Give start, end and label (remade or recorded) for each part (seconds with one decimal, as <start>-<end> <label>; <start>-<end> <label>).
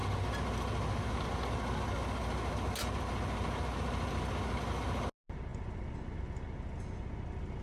0.0-7.6 recorded